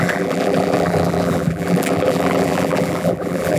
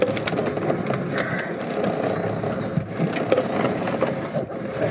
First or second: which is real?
second